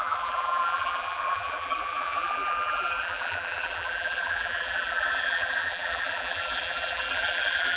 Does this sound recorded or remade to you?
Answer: remade